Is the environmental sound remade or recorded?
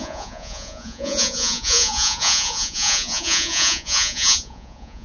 remade